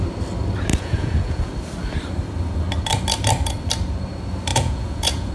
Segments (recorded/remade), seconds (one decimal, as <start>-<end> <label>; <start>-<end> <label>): 0.0-0.7 recorded; 0.7-1.5 remade; 1.5-4.5 recorded; 4.5-5.3 remade